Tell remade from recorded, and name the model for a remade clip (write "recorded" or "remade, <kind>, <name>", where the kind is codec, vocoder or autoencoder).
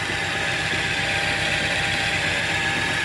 recorded